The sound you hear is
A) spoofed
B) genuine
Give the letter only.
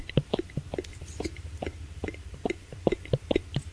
A